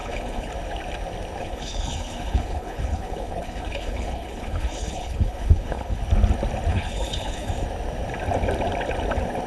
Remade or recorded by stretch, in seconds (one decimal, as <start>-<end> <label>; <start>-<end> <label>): 0.0-0.5 remade; 0.5-1.4 recorded; 1.4-6.0 remade; 6.0-6.7 recorded; 6.7-7.5 remade; 7.5-9.5 recorded